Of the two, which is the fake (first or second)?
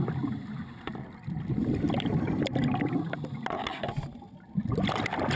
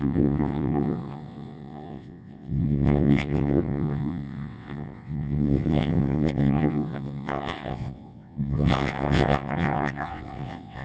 second